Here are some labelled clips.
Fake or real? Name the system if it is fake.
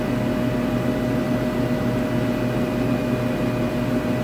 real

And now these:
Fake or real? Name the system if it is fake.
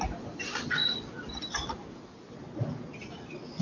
real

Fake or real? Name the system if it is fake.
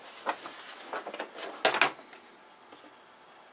real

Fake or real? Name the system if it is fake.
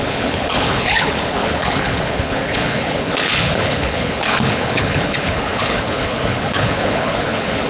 fake, codec, HILCodec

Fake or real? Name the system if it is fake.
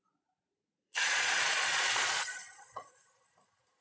fake, vocoder, Vocos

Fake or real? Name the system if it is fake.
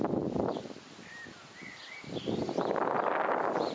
real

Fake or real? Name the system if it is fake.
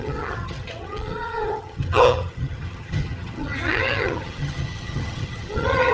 fake, vocoder, HiFi-GAN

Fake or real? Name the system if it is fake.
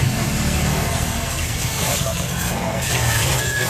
fake, codec, SNAC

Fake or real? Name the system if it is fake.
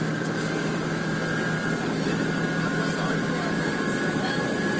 real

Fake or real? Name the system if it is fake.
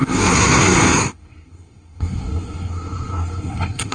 fake, codec, SNAC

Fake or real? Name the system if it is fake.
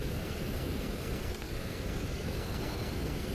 fake, codec, SNAC